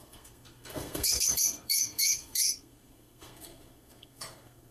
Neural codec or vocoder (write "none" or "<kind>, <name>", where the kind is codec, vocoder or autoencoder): codec, SNAC